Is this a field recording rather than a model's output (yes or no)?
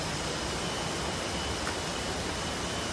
yes